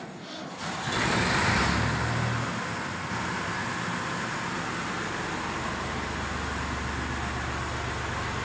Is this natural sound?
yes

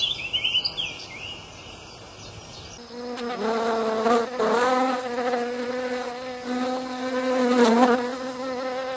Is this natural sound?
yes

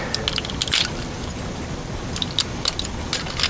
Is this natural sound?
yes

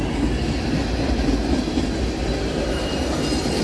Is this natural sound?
yes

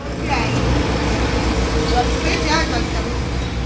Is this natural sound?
yes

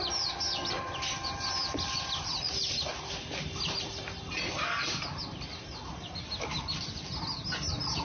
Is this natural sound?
yes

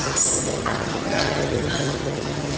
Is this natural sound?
no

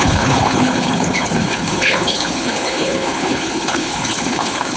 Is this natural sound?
no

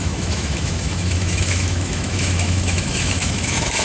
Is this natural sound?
no